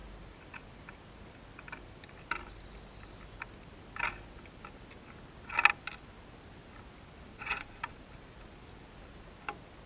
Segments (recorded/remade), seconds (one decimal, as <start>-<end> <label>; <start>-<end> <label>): 0.0-7.3 recorded; 7.3-8.0 remade; 8.0-9.9 recorded